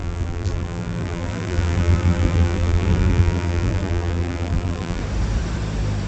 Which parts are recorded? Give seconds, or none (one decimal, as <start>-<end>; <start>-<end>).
5.0-6.1